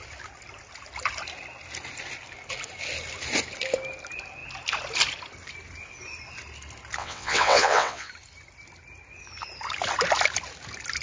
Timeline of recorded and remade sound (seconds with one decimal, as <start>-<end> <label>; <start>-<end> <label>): 0.0-7.0 recorded; 7.0-8.1 remade; 8.1-11.0 recorded